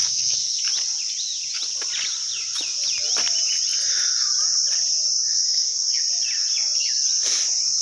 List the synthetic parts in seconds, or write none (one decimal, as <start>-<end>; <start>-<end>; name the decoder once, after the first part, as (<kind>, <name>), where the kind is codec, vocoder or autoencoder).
0.0-0.6 (codec, SNAC); 5.4-6.0